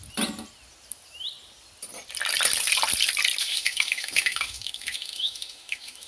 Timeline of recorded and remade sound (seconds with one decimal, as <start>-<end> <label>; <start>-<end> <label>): 0.0-3.4 recorded; 3.4-6.1 remade